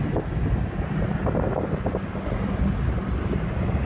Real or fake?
real